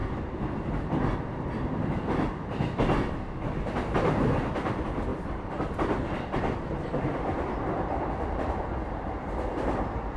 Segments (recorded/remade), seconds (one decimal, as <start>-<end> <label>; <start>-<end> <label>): 0.0-3.1 remade; 3.1-5.1 recorded; 5.1-8.5 remade; 8.5-10.2 recorded